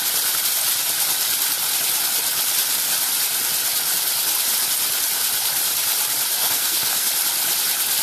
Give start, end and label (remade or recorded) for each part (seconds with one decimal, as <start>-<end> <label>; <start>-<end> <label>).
0.0-6.4 recorded; 6.4-7.1 remade; 7.1-8.0 recorded